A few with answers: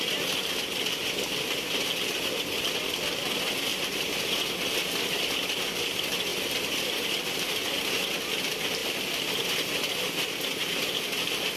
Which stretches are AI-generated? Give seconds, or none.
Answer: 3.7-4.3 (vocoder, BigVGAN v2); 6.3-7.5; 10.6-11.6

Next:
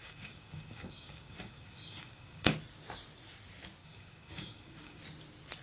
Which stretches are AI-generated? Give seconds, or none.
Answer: 0.0-2.5 (codec, DAC); 3.8-5.0

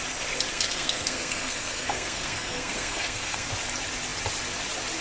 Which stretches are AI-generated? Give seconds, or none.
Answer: 0.5-3.5 (codec, SNAC)

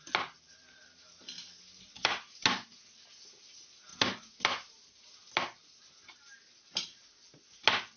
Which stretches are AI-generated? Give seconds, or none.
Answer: none